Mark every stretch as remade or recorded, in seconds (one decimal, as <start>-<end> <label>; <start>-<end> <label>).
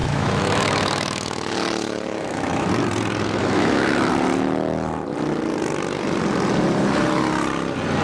0.0-2.7 remade; 2.7-3.4 recorded; 3.4-4.1 remade; 4.1-8.0 recorded